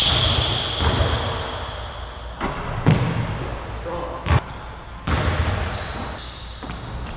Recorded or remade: recorded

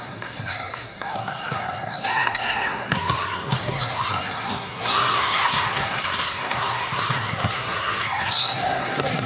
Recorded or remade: remade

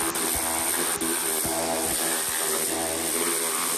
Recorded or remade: recorded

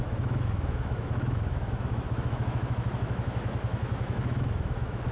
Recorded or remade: remade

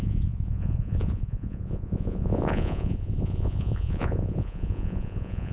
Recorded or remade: remade